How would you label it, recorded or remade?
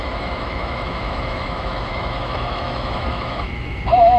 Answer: remade